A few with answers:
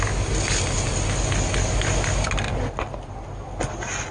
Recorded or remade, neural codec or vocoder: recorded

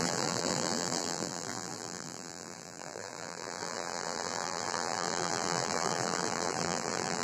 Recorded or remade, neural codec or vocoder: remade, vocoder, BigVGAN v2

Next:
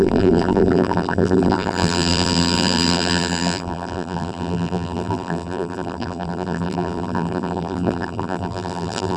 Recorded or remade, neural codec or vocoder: remade, vocoder, BigVGAN v2